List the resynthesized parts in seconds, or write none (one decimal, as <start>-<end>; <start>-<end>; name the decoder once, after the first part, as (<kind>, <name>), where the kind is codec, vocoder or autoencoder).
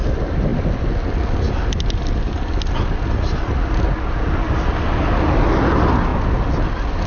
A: none